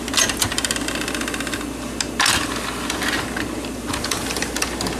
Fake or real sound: real